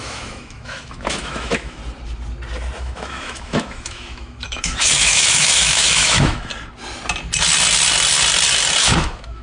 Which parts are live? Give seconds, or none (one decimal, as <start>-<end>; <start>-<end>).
1.8-2.8; 6.5-8.8